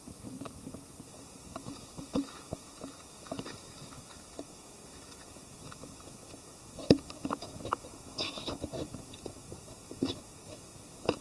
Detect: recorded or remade remade